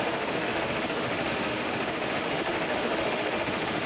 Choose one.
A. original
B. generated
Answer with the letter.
B